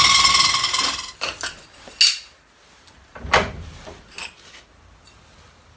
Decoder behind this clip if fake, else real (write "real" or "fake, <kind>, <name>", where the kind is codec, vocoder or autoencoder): real